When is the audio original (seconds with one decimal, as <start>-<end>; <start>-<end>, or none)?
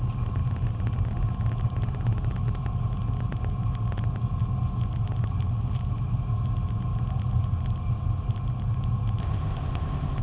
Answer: 0.0-9.2